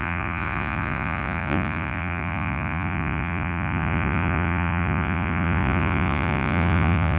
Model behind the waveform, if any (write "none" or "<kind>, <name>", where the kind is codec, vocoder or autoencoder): vocoder, Vocos